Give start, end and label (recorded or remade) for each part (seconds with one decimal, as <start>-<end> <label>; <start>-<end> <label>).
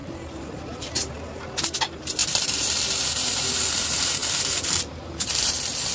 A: 0.0-5.9 remade